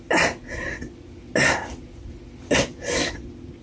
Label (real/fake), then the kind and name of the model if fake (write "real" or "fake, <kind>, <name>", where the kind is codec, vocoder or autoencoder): real